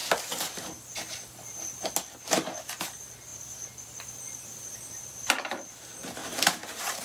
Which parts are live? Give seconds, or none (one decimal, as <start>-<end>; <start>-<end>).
0.0-3.3; 5.1-6.2